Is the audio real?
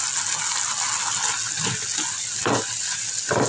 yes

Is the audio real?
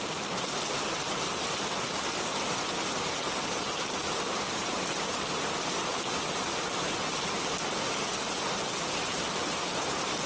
yes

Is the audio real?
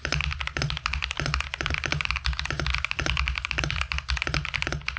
yes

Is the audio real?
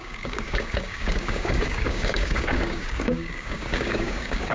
no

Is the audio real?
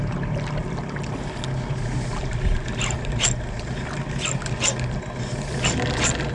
yes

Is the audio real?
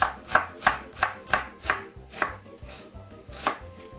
no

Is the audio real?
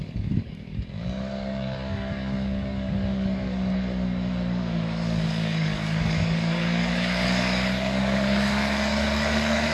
no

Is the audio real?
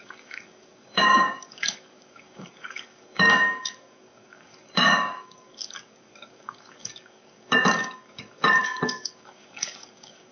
no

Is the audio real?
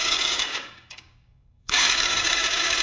no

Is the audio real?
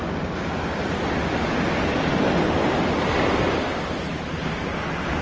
yes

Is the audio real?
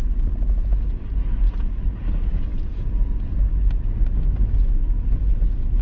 yes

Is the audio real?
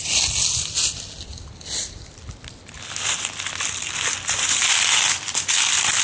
yes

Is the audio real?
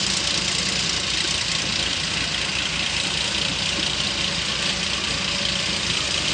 yes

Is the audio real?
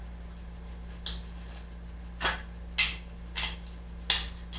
yes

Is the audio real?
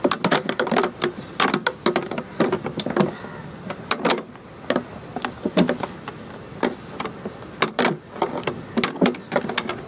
yes